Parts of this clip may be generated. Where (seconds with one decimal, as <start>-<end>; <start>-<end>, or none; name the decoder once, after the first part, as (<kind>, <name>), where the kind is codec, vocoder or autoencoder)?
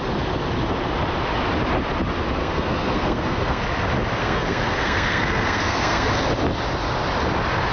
2.4-3.6 (codec, SNAC); 4.2-6.1